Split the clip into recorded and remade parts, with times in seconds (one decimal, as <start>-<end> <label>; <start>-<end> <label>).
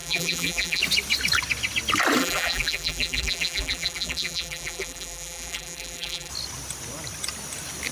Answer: 0.0-0.8 remade; 0.8-2.2 recorded; 2.2-6.3 remade; 6.3-7.9 recorded